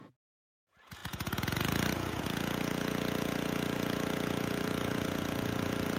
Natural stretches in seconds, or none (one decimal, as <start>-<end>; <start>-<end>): none